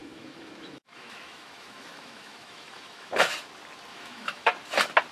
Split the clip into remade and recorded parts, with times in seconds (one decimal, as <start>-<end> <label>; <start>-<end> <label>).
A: 0.0-3.1 remade; 3.1-3.9 recorded; 3.9-4.5 remade; 4.5-5.1 recorded